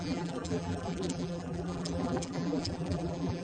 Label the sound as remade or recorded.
remade